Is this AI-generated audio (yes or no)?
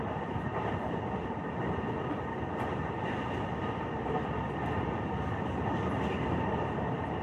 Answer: no